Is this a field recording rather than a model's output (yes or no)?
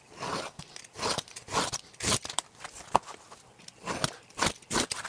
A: yes